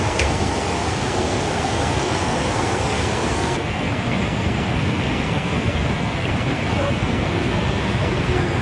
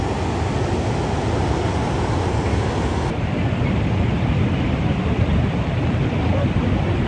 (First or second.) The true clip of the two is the second